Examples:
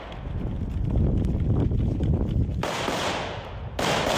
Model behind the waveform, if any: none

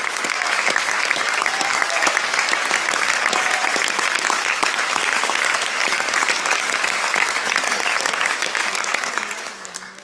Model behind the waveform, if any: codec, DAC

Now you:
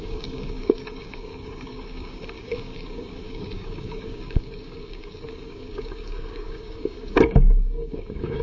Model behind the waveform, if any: codec, DAC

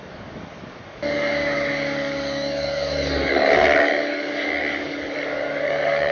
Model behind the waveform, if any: codec, DAC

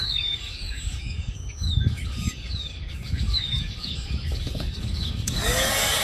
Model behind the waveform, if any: codec, DAC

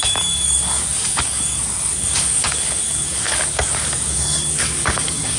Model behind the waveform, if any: codec, DAC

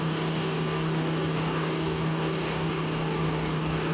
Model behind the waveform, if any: codec, DAC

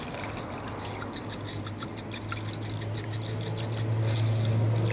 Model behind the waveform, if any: none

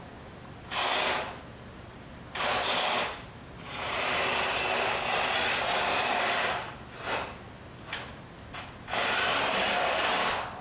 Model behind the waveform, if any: none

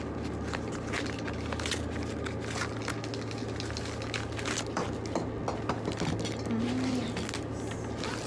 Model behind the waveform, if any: none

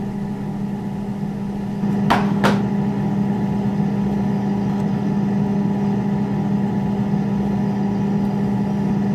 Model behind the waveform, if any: none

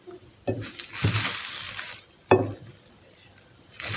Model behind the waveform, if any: none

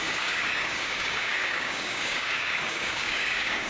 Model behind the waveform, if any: codec, DAC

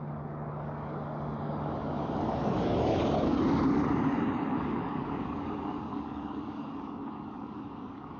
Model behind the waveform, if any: codec, DAC